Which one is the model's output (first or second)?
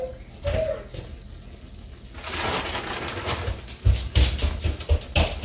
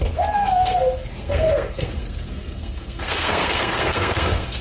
second